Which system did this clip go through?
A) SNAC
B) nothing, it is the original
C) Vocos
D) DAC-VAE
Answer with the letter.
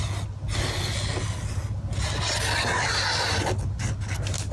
B